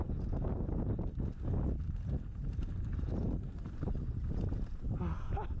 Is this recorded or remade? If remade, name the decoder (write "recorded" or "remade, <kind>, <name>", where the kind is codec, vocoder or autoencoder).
recorded